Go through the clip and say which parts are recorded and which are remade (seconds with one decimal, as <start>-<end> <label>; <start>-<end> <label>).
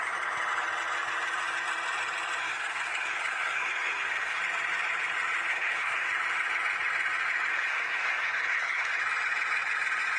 0.0-2.4 recorded; 2.4-4.4 remade; 4.4-5.5 recorded; 5.5-6.1 remade; 6.1-7.5 recorded; 7.5-9.0 remade; 9.0-10.2 recorded